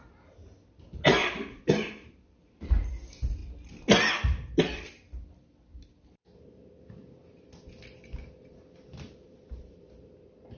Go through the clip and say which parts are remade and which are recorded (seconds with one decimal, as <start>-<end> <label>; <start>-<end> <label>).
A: 0.0-1.2 recorded; 1.2-2.3 remade; 2.3-8.8 recorded; 8.8-9.9 remade; 9.9-10.6 recorded